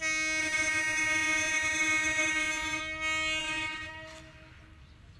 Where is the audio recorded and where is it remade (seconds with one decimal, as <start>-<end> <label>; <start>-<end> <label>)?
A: 0.0-0.4 recorded; 0.4-2.8 remade; 2.8-3.4 recorded; 3.4-3.9 remade; 3.9-5.2 recorded